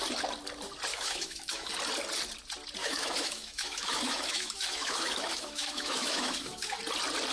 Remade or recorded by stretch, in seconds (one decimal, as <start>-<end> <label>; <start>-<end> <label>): 0.0-0.9 recorded; 0.9-1.7 remade; 1.7-2.8 recorded; 2.8-6.8 remade; 6.8-7.3 recorded